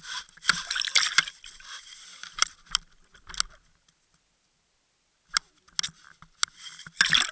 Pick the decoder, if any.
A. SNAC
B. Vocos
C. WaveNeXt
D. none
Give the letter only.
D